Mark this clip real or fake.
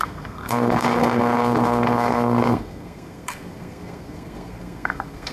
fake